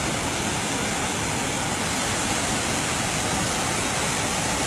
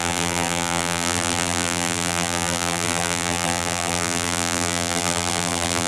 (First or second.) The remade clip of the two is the second